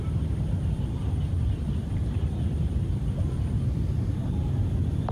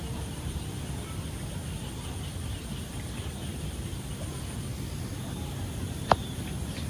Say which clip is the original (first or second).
second